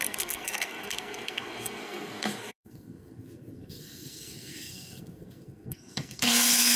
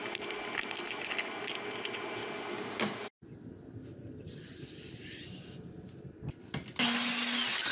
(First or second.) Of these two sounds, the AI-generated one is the first